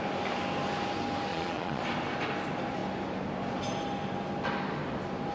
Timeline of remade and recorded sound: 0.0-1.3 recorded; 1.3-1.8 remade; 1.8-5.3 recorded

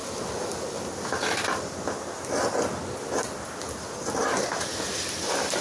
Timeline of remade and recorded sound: 0.0-5.6 recorded

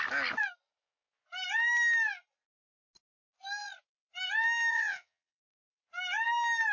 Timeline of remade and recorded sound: 0.0-4.7 recorded; 4.7-5.4 remade; 5.4-6.7 recorded